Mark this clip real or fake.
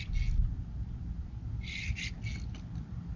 real